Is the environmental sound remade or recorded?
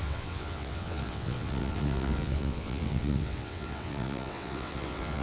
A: remade